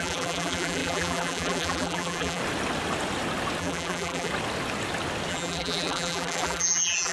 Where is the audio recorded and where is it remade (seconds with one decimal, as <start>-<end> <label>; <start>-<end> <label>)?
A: 0.0-2.4 remade; 2.4-3.6 recorded; 3.6-4.3 remade; 4.3-5.3 recorded; 5.3-7.1 remade